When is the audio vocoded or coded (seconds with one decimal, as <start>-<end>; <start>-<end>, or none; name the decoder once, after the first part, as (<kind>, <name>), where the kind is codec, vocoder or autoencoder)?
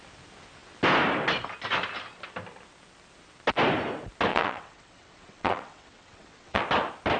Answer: 4.3-6.6 (vocoder, WaveNeXt)